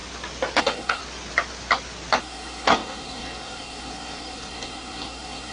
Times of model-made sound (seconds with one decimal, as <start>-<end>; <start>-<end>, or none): 0.6-1.0; 2.2-5.5